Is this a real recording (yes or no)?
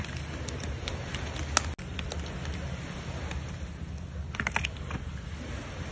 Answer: yes